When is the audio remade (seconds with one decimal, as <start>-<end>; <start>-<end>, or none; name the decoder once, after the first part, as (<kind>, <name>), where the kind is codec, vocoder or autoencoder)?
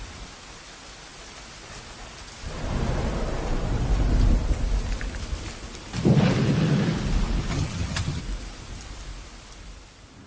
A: 7.5-8.2 (vocoder, HiFi-GAN)